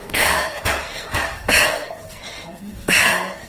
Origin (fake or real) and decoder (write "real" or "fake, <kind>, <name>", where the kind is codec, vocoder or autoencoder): fake, codec, SNAC